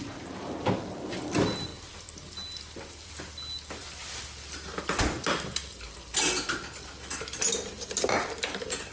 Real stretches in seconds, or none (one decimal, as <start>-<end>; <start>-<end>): 0.0-8.9